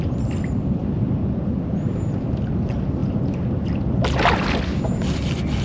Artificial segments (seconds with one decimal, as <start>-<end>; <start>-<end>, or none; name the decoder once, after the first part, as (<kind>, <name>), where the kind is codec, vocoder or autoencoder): none